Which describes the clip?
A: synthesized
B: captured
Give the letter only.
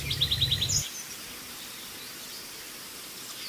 B